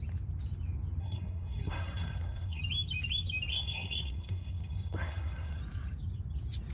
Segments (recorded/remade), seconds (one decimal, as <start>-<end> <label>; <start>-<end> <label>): 0.0-1.0 recorded; 1.0-2.6 remade; 2.6-3.5 recorded; 3.5-5.6 remade; 5.6-6.7 recorded